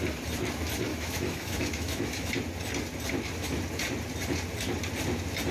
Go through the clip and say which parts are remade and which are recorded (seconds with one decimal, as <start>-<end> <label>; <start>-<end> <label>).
0.0-0.9 recorded; 0.9-2.3 remade; 2.3-5.5 recorded

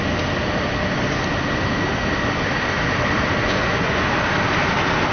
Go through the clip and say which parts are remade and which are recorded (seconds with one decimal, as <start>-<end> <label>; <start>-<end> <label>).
0.0-3.4 recorded; 3.4-4.0 remade; 4.0-5.1 recorded

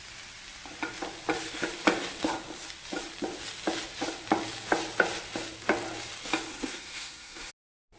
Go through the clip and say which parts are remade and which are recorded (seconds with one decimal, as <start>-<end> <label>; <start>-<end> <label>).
0.0-6.5 recorded; 6.5-7.5 remade; 7.5-8.0 recorded

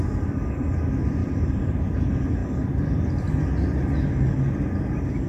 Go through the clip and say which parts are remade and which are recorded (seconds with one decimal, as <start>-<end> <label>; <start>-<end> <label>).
0.0-1.2 recorded; 1.2-2.0 remade; 2.0-5.3 recorded

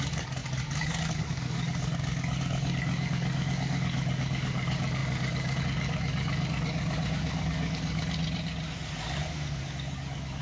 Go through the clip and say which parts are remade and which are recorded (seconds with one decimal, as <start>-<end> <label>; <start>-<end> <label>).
0.0-8.2 remade; 8.2-9.2 recorded; 9.2-10.4 remade

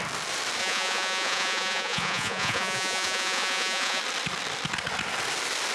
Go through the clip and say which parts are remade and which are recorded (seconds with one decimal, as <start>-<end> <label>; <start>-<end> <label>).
0.0-0.6 recorded; 0.6-4.0 remade; 4.0-5.7 recorded